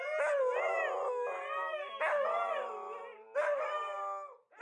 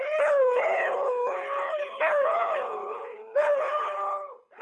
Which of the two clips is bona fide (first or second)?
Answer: first